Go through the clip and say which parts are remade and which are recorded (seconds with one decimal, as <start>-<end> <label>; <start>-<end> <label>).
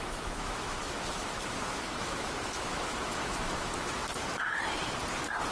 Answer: 0.0-4.0 remade; 4.0-5.5 recorded